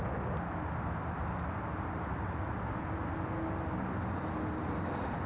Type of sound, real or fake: real